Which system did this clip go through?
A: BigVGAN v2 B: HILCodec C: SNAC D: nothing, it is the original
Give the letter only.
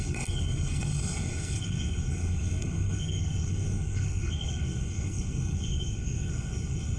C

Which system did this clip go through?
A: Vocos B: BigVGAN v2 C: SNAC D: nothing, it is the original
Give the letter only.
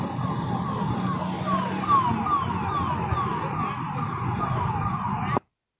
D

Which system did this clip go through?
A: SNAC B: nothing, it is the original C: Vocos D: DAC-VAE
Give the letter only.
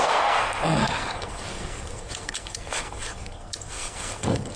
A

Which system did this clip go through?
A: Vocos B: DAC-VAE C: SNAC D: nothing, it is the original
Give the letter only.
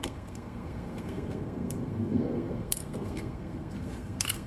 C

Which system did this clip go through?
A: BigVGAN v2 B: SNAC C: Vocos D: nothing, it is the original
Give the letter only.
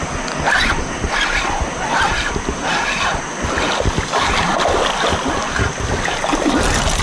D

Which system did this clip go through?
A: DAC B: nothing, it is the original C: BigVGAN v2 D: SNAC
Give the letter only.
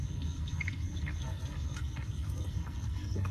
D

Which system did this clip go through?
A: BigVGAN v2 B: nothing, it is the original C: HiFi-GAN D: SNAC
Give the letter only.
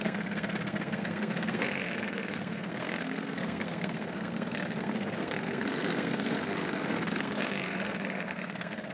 D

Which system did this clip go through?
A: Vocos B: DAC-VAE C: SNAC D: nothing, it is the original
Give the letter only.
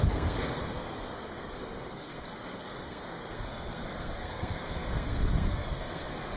C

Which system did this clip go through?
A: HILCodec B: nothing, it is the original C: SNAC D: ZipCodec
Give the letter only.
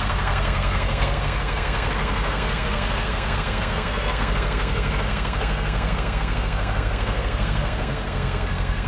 C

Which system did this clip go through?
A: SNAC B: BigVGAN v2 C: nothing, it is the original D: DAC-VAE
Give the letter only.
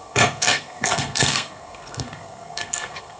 A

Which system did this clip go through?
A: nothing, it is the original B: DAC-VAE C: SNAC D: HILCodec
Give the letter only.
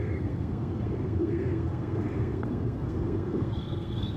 C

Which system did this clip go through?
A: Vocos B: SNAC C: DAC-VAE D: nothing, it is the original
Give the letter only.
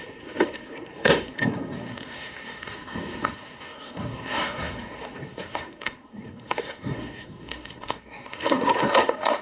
B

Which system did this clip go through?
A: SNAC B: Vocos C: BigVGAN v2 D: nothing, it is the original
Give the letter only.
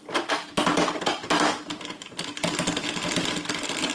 D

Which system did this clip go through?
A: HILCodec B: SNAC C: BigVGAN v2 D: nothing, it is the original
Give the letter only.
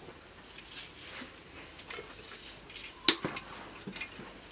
D